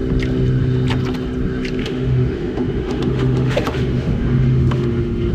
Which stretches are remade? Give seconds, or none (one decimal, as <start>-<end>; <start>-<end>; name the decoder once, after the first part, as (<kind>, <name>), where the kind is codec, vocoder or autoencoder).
1.8-5.3 (autoencoder, DAC-VAE)